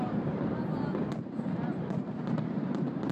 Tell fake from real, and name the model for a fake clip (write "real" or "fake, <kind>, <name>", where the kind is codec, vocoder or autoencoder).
fake, vocoder, BigVGAN v2